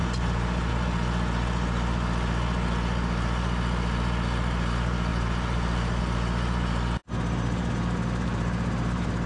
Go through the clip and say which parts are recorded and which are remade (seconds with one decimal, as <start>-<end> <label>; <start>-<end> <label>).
0.0-0.7 remade; 0.7-5.1 recorded; 5.1-6.0 remade; 6.0-9.3 recorded